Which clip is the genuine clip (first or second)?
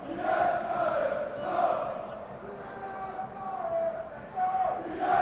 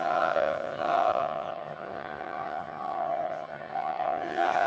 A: first